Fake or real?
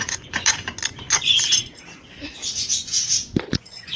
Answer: fake